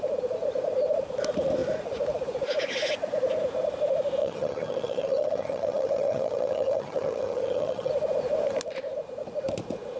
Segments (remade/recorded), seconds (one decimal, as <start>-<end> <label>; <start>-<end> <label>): 0.0-4.2 recorded; 4.2-7.9 remade; 7.9-10.0 recorded